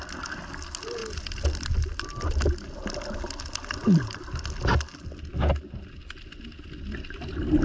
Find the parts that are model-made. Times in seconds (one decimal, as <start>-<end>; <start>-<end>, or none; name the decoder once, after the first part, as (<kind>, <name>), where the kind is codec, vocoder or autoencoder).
none